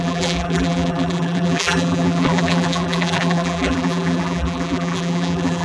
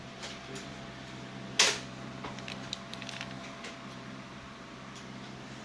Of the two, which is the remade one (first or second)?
first